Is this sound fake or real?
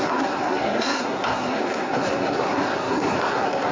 fake